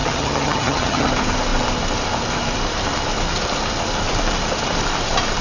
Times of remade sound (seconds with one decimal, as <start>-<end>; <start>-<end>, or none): 0.0-1.1